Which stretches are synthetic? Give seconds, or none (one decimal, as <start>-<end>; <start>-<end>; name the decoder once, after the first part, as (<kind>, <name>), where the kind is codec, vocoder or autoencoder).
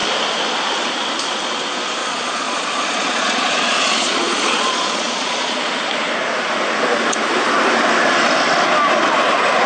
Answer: 2.0-5.6 (vocoder, Vocos)